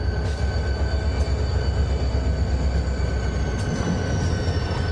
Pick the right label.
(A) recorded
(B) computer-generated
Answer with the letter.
A